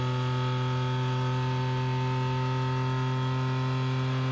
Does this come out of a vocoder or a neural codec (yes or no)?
no